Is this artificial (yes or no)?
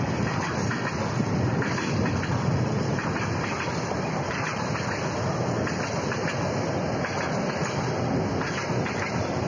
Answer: no